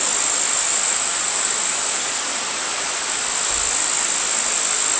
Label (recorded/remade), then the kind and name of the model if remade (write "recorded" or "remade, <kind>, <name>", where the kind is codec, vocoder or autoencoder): recorded